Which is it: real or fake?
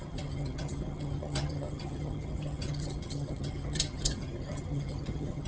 fake